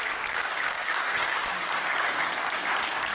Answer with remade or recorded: remade